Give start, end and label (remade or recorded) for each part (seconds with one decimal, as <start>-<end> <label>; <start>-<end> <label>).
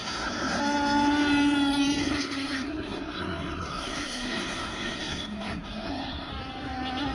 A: 0.0-0.6 remade; 0.6-2.0 recorded; 2.0-6.3 remade; 6.3-7.1 recorded